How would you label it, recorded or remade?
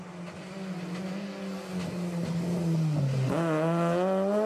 recorded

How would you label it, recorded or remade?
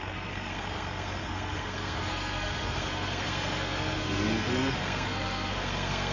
remade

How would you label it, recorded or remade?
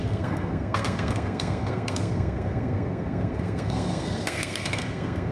remade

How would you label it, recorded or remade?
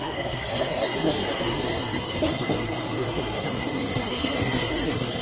remade